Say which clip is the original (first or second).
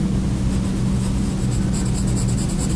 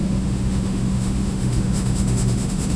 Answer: first